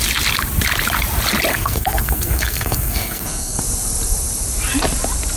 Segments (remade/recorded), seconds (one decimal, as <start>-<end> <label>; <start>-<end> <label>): 0.0-1.5 recorded; 1.5-3.6 remade; 3.6-5.4 recorded

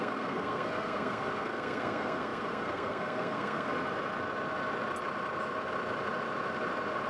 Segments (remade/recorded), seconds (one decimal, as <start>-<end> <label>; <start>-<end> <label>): 0.0-3.7 remade; 3.7-7.1 recorded

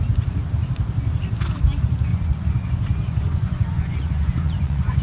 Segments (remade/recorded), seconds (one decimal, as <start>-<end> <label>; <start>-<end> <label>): 0.0-2.1 recorded; 2.1-5.0 remade

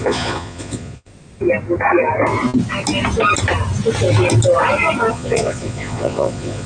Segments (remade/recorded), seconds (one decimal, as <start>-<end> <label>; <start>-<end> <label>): 0.0-1.1 remade; 1.1-5.1 recorded; 5.1-6.7 remade

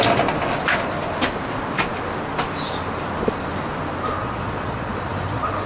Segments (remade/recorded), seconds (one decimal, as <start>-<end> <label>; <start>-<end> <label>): 0.0-4.2 recorded; 4.2-5.7 remade